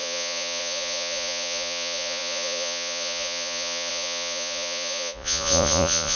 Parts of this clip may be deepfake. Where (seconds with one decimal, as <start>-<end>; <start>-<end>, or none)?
0.0-6.2

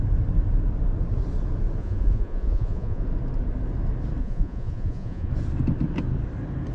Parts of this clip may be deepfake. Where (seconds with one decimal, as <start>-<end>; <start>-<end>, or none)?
1.8-3.0; 4.2-5.3

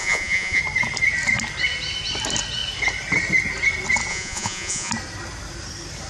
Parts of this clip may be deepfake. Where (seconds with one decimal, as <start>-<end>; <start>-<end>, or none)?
0.0-0.6; 4.1-4.9